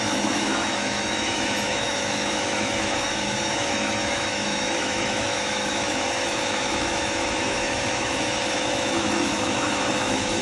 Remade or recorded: remade